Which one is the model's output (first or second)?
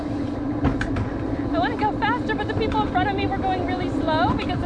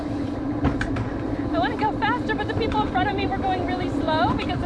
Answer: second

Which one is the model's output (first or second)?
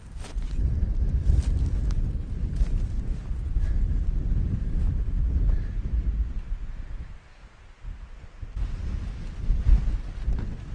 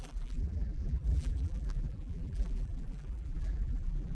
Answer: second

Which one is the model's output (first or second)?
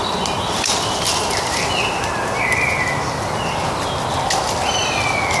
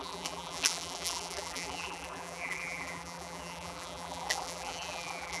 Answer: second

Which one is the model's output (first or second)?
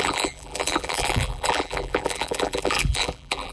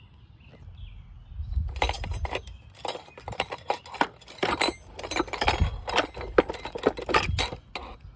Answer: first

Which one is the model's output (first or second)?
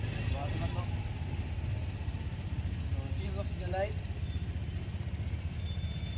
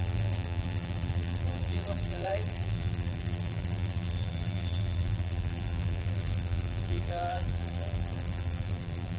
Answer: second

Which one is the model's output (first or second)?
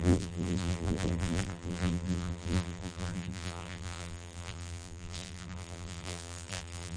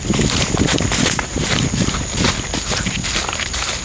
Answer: first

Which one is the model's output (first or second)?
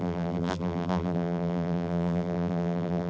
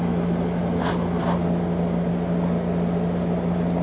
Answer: first